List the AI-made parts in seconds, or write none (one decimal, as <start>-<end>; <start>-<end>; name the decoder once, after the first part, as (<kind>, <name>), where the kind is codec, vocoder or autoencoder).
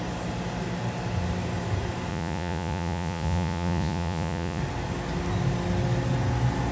2.1-4.6 (vocoder, Vocos)